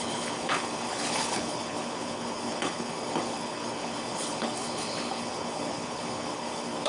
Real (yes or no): no